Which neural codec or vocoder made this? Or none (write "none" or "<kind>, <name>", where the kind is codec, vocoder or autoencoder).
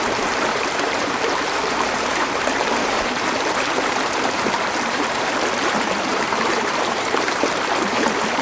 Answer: vocoder, BigVGAN v2